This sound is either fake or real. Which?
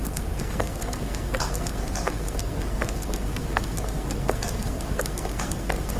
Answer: fake